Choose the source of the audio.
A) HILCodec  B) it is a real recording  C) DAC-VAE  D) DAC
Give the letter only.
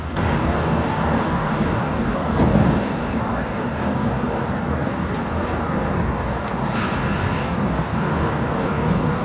D